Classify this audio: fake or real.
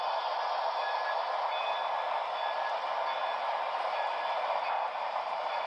real